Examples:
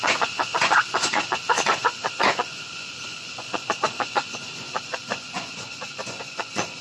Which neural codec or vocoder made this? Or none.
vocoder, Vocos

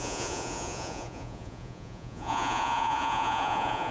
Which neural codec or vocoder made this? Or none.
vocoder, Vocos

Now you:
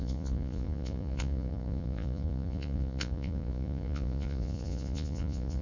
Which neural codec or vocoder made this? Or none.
vocoder, Vocos